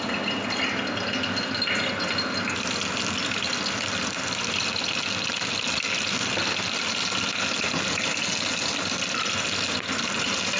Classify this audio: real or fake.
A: real